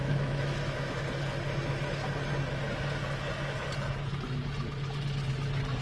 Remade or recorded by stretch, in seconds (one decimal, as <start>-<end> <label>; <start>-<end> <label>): 0.0-1.0 remade; 1.0-5.8 recorded